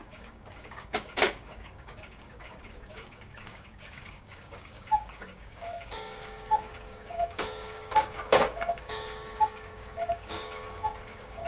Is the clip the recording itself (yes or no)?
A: no